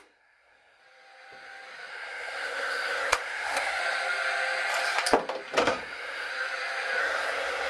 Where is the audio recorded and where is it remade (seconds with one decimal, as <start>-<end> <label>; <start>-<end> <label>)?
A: 0.0-0.8 remade; 0.8-1.9 recorded; 1.9-3.8 remade; 3.8-5.6 recorded; 5.6-6.3 remade; 6.3-7.0 recorded; 7.0-7.7 remade